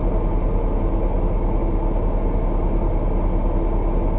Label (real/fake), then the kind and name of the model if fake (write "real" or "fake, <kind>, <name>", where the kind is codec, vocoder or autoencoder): real